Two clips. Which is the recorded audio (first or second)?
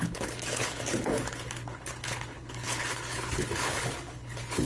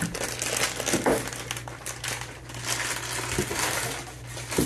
second